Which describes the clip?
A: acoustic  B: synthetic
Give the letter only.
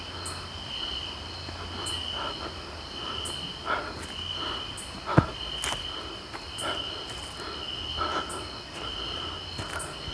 A